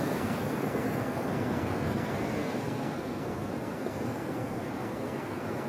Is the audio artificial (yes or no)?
yes